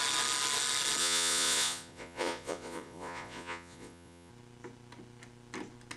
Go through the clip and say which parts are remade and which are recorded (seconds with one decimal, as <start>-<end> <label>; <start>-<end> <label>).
0.0-1.0 recorded; 1.0-4.3 remade; 4.3-6.0 recorded